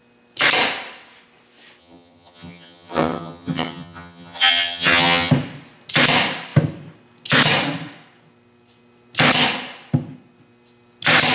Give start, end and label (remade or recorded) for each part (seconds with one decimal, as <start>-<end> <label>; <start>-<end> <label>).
0.0-1.8 recorded; 1.8-5.3 remade; 5.3-11.3 recorded